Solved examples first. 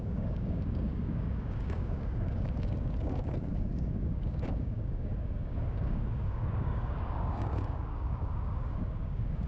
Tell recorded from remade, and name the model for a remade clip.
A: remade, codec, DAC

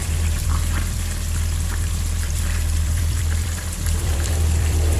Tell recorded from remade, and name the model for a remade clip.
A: remade, vocoder, BigVGAN v2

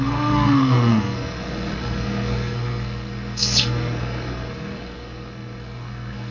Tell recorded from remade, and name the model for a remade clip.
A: remade, codec, SNAC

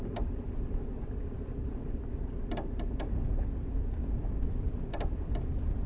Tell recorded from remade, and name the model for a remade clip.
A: recorded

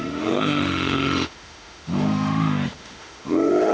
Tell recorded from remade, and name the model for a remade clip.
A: remade, autoencoder, DAC-VAE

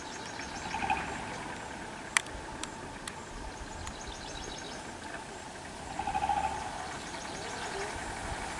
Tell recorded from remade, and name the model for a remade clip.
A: recorded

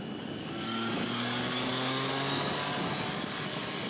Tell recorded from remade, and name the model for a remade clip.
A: remade, codec, DAC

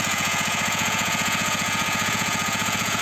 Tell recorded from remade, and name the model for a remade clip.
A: remade, vocoder, Vocos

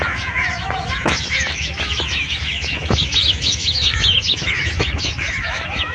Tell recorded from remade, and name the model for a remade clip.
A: remade, autoencoder, DAC-VAE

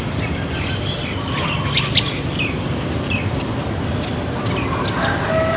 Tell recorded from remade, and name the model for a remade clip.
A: recorded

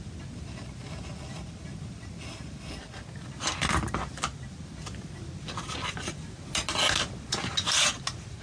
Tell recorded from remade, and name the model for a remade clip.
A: recorded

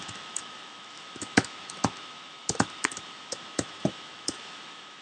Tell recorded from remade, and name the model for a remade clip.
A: remade, autoencoder, DAC-VAE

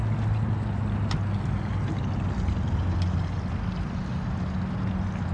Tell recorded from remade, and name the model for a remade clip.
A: recorded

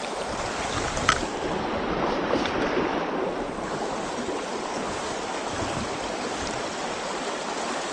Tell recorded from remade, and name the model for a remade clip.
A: remade, vocoder, BigVGAN v2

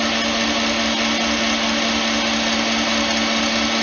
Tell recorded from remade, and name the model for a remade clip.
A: recorded